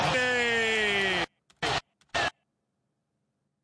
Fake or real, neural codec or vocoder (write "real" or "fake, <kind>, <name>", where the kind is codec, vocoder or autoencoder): real